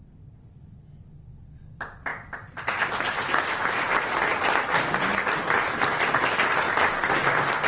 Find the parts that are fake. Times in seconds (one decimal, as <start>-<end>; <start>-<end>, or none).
2.1-6.2